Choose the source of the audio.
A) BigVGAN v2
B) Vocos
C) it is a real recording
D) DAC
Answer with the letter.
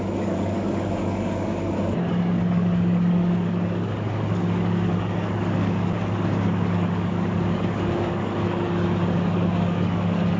D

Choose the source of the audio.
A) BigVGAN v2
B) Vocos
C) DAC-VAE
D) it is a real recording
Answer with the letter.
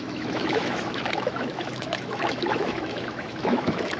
C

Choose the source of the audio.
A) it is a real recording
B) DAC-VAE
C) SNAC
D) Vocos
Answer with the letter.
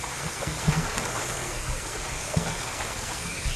C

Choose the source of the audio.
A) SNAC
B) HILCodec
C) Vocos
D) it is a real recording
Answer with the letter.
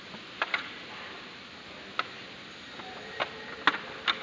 D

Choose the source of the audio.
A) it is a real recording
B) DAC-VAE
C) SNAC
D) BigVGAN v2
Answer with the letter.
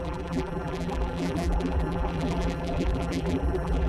D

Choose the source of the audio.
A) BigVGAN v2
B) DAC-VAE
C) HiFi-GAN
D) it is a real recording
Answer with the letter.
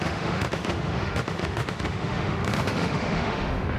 B